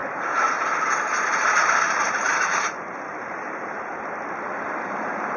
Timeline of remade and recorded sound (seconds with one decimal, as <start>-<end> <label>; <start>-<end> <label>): 0.0-3.9 remade; 3.9-4.7 recorded; 4.7-5.4 remade